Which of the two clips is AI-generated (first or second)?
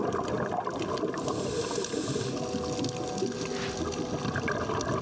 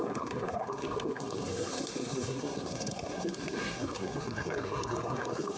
second